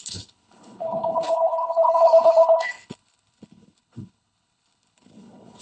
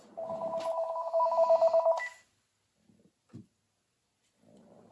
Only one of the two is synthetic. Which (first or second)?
first